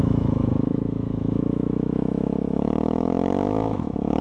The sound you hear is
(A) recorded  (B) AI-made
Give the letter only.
B